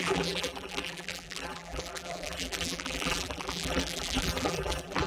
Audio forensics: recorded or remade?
remade